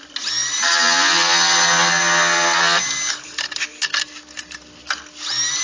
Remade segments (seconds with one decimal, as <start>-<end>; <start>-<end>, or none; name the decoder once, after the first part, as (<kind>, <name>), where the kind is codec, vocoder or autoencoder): none